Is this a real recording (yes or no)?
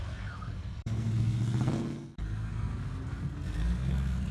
no